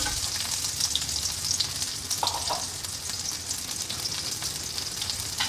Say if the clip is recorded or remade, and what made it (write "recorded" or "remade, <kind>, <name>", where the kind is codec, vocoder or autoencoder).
recorded